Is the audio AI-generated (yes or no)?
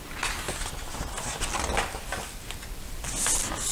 no